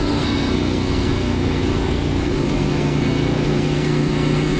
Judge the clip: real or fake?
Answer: fake